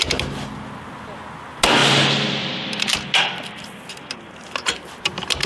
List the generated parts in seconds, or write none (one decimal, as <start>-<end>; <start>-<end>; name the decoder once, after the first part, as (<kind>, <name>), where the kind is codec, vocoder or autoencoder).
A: none